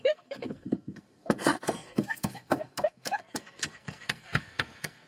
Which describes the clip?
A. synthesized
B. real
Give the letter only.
A